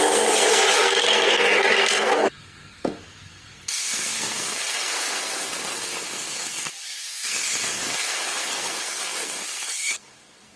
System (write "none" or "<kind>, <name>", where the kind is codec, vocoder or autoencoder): codec, SNAC